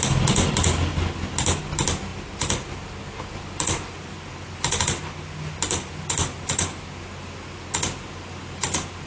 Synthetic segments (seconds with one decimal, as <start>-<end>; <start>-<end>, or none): none